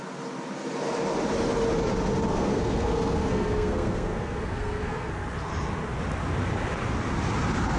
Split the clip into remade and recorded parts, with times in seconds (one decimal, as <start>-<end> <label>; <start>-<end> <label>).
0.0-2.3 recorded; 2.3-5.1 remade; 5.1-7.8 recorded